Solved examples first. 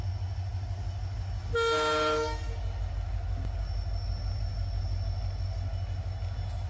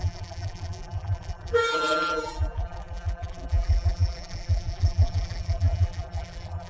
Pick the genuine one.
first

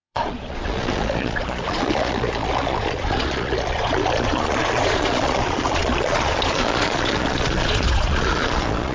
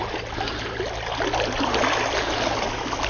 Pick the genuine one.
second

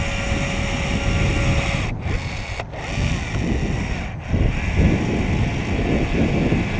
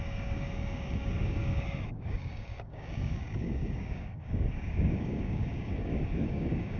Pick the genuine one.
first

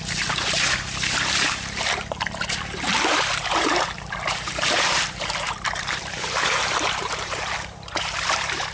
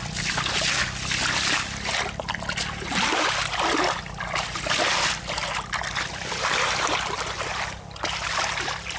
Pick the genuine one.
second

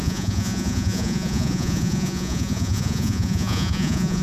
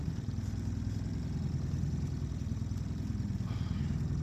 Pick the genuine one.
second